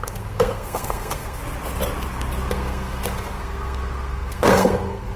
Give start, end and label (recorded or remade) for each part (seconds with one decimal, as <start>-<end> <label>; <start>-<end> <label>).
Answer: 0.0-1.4 remade; 1.4-2.5 recorded; 2.5-5.2 remade